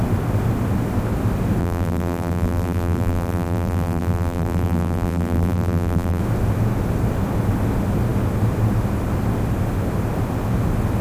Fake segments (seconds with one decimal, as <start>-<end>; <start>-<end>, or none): 1.6-6.2

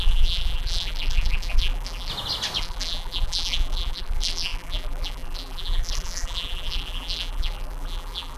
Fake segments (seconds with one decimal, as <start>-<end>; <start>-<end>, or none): 0.0-2.1; 2.6-8.4

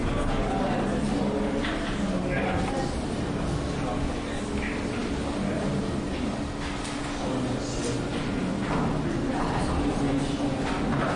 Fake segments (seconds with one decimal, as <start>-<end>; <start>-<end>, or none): none

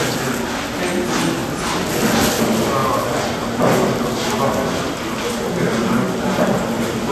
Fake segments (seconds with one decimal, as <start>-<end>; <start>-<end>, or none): none